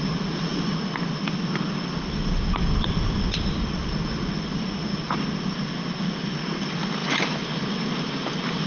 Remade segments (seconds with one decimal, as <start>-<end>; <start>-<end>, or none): none